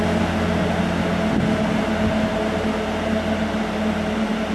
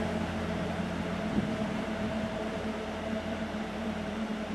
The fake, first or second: second